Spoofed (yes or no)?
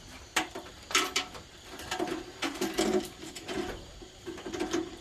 yes